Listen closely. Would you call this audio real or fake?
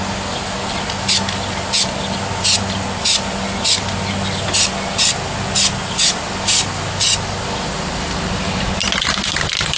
real